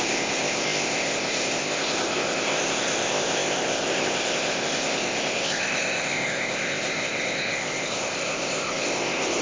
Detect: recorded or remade remade